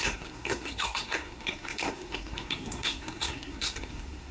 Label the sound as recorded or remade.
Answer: remade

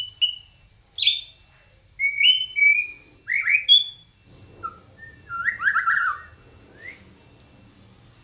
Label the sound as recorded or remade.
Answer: recorded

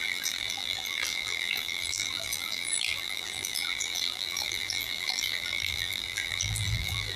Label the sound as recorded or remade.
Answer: remade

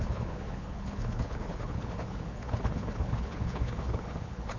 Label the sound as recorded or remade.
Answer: remade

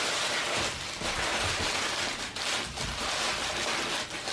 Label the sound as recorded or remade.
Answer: recorded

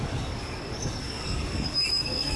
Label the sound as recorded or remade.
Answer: remade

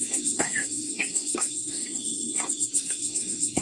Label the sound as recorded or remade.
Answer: remade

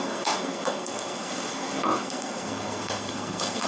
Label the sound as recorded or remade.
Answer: remade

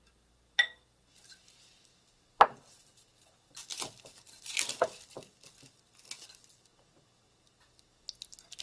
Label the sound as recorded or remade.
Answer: recorded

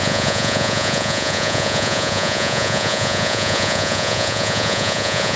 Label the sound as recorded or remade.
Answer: remade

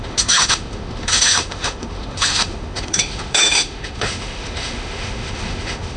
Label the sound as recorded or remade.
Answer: remade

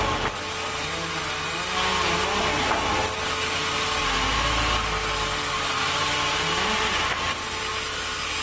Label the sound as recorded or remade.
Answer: recorded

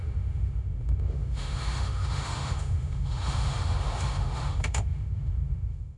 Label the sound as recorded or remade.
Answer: remade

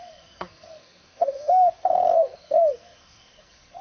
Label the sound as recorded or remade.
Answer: remade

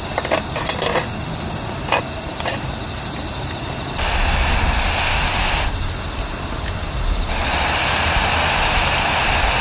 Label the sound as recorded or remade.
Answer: recorded